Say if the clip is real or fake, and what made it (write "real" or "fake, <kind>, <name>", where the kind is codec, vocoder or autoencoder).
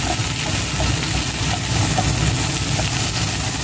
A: real